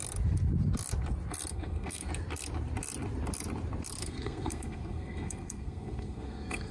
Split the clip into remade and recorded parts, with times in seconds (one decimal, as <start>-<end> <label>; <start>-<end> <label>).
0.0-1.5 recorded; 1.5-2.1 remade; 2.1-4.0 recorded; 4.0-6.7 remade